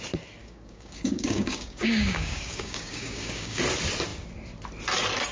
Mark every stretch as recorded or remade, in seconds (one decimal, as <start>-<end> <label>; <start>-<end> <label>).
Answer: 0.0-0.4 recorded; 0.4-3.6 remade; 3.6-5.3 recorded